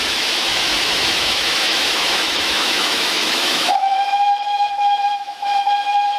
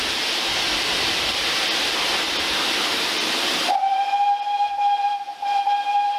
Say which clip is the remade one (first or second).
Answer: first